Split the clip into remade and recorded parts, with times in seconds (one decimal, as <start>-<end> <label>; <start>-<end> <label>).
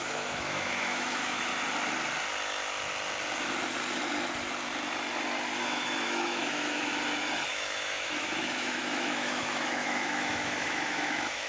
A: 0.0-1.5 remade; 1.5-5.6 recorded; 5.6-6.9 remade; 6.9-7.5 recorded; 7.5-11.5 remade